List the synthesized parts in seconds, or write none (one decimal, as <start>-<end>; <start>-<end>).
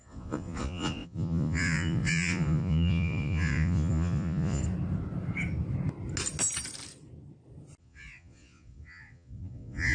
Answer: 0.0-4.6; 7.8-9.9